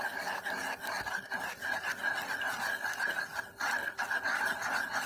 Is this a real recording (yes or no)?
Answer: no